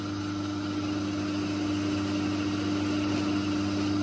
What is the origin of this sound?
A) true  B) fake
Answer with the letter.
A